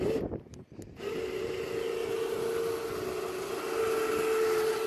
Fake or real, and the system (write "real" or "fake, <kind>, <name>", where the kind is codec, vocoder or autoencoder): real